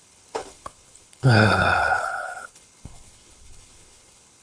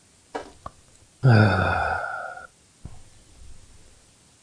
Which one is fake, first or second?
first